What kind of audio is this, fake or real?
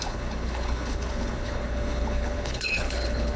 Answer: fake